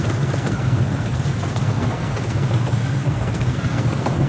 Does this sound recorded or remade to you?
remade